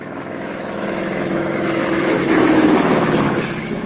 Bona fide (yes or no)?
no